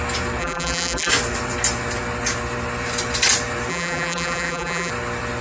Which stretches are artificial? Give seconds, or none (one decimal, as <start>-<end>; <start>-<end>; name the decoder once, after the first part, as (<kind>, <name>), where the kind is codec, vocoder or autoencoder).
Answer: 0.4-1.1 (vocoder, BigVGAN v2); 3.7-4.9